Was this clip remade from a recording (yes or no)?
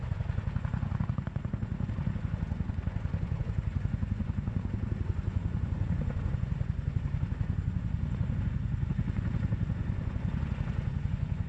yes